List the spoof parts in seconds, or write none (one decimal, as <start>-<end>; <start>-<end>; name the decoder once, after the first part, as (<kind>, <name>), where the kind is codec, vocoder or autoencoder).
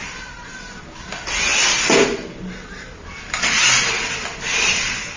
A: none